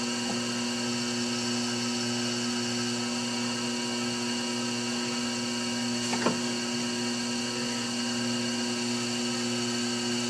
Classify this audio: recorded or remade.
recorded